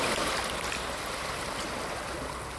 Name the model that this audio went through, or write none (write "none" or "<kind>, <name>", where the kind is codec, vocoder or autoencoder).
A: none